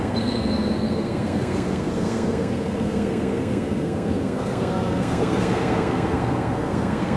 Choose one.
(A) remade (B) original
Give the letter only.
A